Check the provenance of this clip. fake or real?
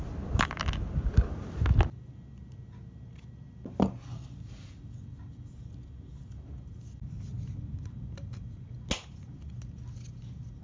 real